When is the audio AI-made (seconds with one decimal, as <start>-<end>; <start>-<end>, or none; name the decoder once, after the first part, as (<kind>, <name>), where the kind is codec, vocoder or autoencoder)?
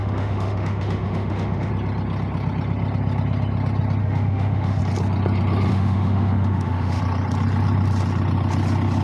0.0-1.7 (autoencoder, DAC-VAE); 4.0-4.8; 5.7-7.0